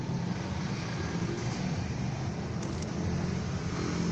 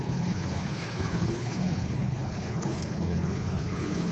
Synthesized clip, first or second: second